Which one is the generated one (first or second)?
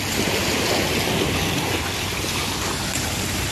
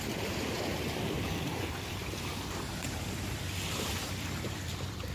second